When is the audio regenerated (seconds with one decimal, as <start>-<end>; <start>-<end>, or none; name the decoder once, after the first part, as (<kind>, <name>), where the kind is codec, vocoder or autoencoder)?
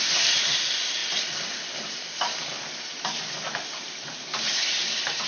none